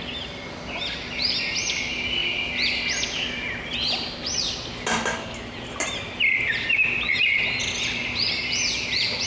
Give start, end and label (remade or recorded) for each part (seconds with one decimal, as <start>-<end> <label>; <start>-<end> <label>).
0.0-9.3 recorded